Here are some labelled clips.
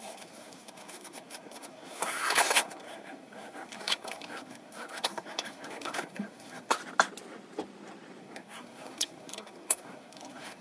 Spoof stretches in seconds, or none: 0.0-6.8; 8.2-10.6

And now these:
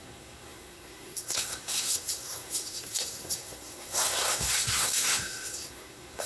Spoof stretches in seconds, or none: 0.0-6.3

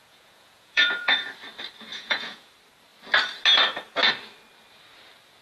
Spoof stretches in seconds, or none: 0.0-1.3; 1.9-2.5

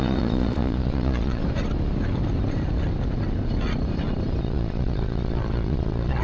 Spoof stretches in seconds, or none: 0.0-1.4; 4.4-6.2

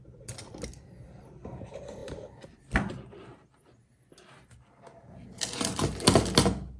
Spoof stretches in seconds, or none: none

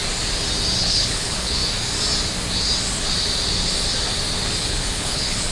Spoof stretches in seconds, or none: 0.8-1.6; 4.6-5.5

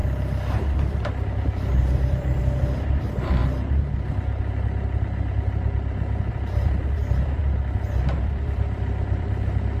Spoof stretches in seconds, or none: 0.0-3.4; 6.3-7.4; 8.2-9.8

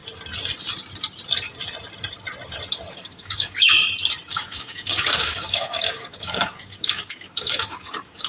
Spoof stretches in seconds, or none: 2.9-3.7; 4.3-8.3